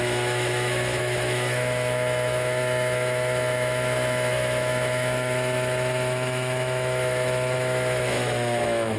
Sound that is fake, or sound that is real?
fake